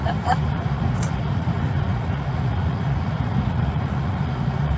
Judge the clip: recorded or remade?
remade